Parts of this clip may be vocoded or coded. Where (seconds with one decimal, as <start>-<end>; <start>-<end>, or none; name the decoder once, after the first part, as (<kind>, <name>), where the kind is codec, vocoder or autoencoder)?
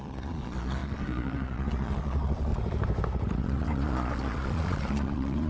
0.0-2.5 (vocoder, Vocos); 3.4-5.5